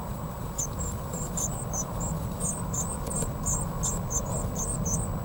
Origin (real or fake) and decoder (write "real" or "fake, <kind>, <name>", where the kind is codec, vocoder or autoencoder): real